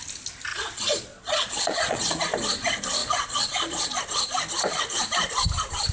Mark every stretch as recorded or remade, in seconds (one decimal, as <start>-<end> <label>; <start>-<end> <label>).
0.0-0.5 recorded; 0.5-2.2 remade; 2.2-3.0 recorded; 3.0-4.0 remade; 4.0-5.9 recorded